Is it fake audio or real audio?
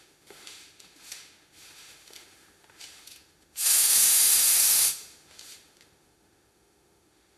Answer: fake